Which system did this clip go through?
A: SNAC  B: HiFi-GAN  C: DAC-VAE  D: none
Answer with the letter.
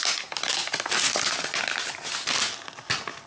D